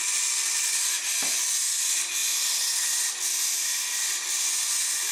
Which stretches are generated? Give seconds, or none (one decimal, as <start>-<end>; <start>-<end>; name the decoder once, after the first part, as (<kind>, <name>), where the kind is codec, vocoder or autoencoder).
2.2-3.1 (vocoder, BigVGAN v2)